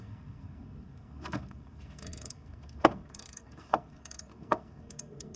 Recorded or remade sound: remade